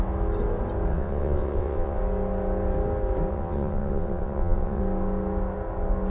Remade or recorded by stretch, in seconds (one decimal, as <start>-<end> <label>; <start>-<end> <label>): 0.0-0.9 recorded; 0.9-2.0 remade; 2.0-3.3 recorded; 3.3-4.8 remade; 4.8-6.1 recorded